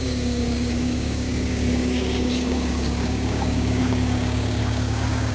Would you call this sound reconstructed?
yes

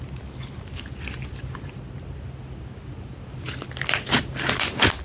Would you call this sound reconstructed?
no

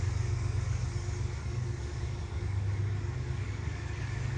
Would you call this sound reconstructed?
yes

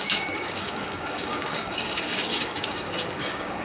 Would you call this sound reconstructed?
yes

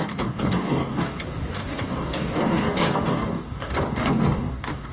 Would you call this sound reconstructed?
yes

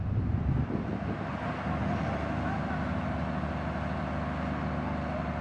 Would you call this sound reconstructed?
no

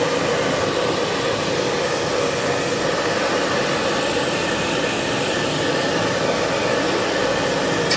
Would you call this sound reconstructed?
no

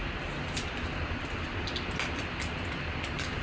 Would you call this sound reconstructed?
no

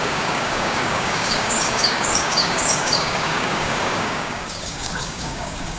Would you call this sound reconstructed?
yes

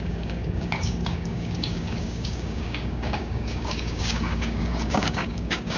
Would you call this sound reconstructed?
yes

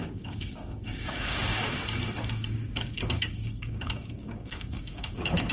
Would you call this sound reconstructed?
yes